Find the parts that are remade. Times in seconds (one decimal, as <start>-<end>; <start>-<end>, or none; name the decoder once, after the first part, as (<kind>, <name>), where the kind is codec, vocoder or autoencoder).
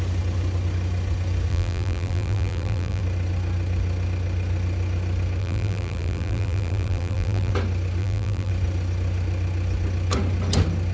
1.5-3.0 (vocoder, BigVGAN v2); 5.4-7.5; 8.0-8.5